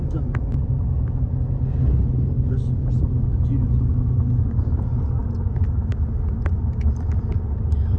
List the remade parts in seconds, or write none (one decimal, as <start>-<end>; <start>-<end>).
none